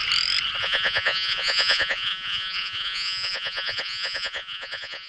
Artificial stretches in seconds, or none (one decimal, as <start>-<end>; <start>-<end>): 0.6-5.1